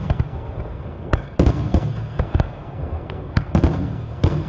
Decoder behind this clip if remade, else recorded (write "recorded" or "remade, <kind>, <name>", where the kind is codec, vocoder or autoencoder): remade, codec, SNAC